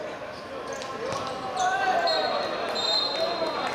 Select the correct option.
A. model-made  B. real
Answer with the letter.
B